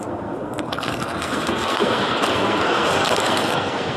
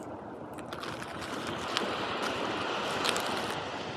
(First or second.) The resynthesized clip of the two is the first